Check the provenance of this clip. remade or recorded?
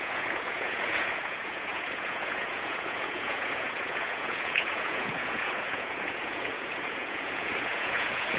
remade